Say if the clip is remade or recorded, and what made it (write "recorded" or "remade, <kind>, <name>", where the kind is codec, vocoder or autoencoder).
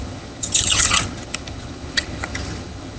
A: remade, vocoder, HiFi-GAN